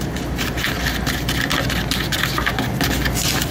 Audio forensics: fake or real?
real